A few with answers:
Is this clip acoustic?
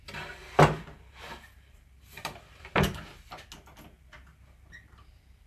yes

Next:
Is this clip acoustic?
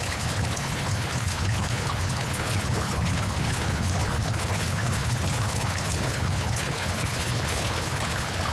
no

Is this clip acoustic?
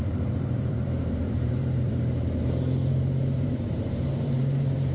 no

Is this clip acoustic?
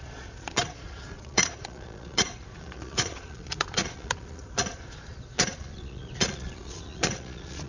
no